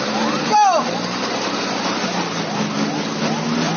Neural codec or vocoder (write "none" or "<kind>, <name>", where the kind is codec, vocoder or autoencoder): none